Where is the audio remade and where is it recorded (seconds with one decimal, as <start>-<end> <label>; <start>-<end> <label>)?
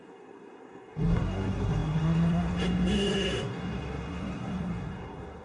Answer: 0.0-5.4 remade